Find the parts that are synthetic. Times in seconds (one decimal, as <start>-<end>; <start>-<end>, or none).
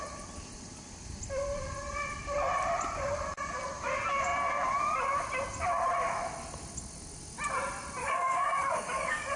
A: 8.0-9.4